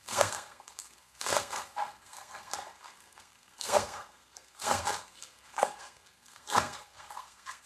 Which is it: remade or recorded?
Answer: remade